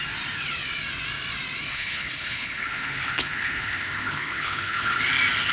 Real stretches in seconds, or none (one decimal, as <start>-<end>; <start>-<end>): 0.0-1.7; 5.0-5.5